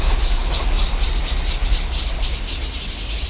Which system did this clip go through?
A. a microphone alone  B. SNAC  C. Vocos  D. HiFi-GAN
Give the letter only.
A